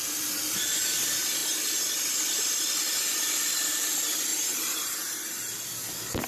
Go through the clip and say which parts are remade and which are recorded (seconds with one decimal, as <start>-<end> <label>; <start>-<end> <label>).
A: 0.0-4.3 recorded; 4.3-4.8 remade; 4.8-6.3 recorded